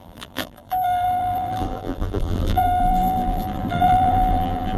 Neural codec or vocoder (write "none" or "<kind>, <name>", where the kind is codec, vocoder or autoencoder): vocoder, BigVGAN v2